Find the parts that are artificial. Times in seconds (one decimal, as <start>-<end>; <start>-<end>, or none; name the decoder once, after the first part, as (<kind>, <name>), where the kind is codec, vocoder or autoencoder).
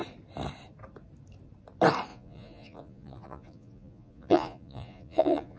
2.1-5.6 (vocoder, Vocos)